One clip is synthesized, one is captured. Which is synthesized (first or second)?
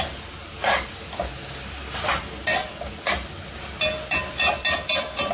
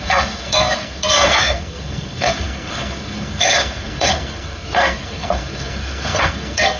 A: second